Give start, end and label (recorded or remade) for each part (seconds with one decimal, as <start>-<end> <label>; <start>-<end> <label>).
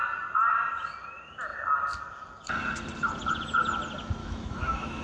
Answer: 0.0-4.2 recorded; 4.2-5.0 remade